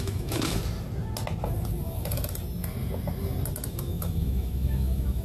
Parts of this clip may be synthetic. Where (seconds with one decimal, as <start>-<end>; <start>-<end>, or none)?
0.0-0.6; 3.7-5.2